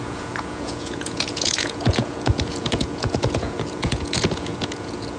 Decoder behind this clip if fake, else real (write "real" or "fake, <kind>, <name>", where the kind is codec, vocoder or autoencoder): fake, vocoder, Vocos